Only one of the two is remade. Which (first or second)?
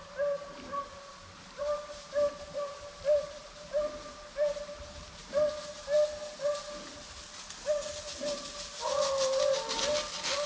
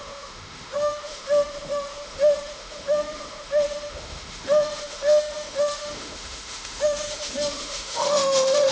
second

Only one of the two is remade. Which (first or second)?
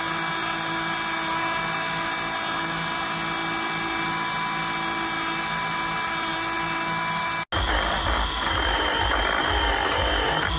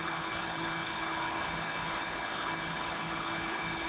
second